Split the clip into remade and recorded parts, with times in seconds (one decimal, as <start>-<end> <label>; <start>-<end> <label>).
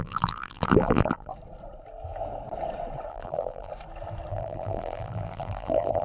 0.0-1.3 remade; 1.3-3.1 recorded; 3.1-3.7 remade; 3.7-4.3 recorded; 4.3-6.0 remade